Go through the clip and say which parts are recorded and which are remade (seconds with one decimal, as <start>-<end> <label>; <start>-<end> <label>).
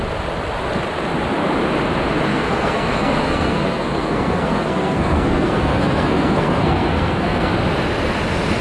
0.0-2.3 recorded; 2.3-7.5 remade; 7.5-8.6 recorded